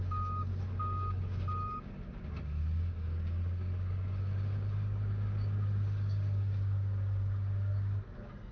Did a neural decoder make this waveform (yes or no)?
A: yes